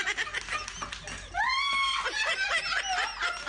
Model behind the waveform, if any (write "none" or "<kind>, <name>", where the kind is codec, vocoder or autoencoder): none